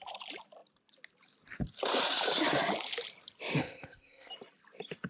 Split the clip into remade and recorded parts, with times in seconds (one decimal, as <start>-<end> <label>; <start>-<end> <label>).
0.0-3.6 recorded; 3.6-4.3 remade; 4.3-5.1 recorded